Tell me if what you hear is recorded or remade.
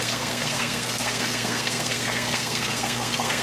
remade